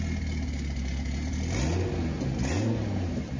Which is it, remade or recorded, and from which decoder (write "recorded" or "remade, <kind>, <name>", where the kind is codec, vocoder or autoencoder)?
recorded